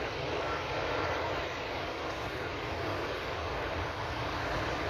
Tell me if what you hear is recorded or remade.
remade